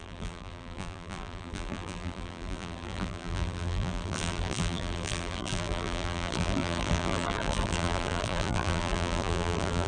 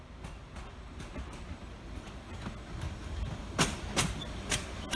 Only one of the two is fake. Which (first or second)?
first